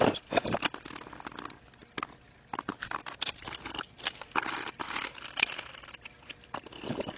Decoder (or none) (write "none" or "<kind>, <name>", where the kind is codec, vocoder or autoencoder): none